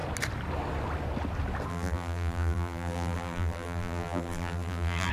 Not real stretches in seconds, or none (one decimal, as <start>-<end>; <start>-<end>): 1.7-5.1